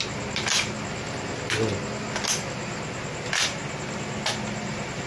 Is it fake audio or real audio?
real